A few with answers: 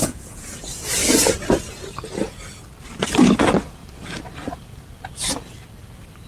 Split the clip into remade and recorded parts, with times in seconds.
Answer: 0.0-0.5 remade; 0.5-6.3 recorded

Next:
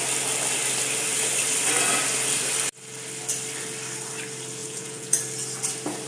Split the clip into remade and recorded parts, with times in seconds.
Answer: 0.0-4.6 recorded; 4.6-5.2 remade; 5.2-6.1 recorded

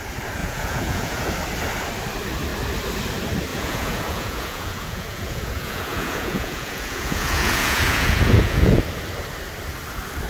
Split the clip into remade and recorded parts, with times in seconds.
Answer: 0.0-0.4 recorded; 0.4-1.3 remade; 1.3-3.5 recorded; 3.5-8.8 remade; 8.8-10.3 recorded

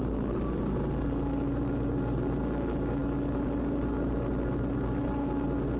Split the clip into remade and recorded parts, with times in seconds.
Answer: 0.0-5.8 recorded